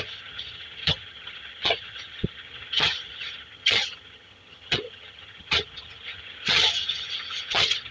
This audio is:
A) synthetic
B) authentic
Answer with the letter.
A